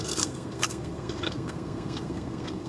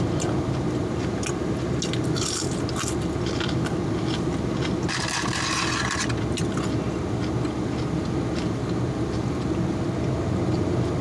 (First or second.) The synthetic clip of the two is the first